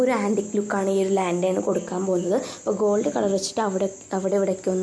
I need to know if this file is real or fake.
real